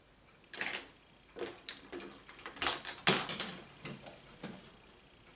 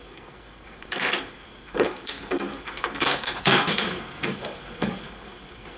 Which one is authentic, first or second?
first